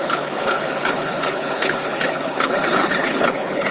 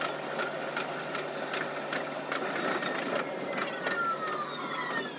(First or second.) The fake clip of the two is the first